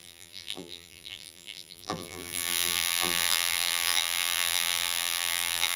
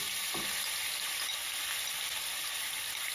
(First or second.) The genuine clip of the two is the second